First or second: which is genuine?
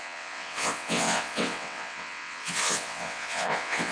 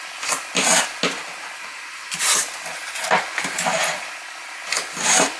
second